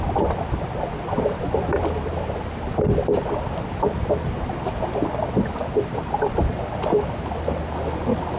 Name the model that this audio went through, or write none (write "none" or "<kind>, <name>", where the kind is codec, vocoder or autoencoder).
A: none